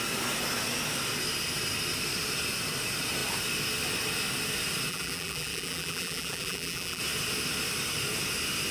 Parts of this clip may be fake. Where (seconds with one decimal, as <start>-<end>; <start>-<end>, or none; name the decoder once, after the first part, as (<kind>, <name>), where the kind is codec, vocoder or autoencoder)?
4.9-7.0 (vocoder, BigVGAN v2)